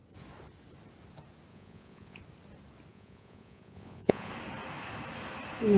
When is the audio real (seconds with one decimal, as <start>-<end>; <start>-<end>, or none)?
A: 0.0-1.5; 2.2-2.9; 4.3-5.8